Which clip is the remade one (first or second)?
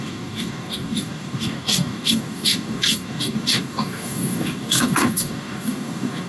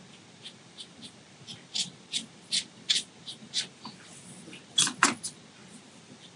first